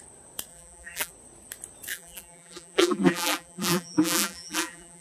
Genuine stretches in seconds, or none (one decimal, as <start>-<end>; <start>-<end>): 0.0-0.5; 1.1-1.9